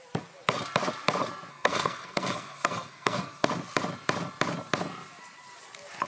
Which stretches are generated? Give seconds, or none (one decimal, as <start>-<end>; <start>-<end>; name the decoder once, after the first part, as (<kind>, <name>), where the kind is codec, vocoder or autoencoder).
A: 1.5-3.5 (codec, SNAC)